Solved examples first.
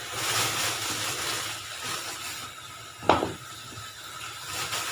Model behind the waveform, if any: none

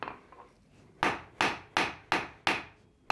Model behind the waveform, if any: none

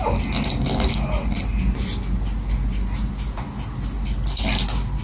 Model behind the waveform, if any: none